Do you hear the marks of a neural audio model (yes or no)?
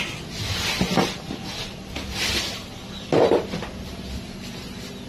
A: no